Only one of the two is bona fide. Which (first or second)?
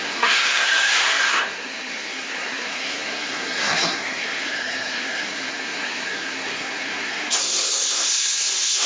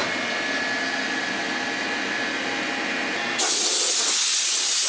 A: second